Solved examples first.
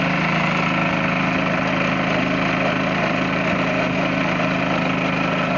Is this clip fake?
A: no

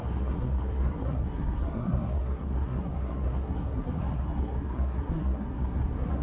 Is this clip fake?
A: yes